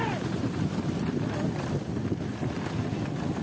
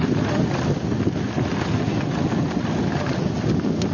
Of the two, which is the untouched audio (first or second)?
second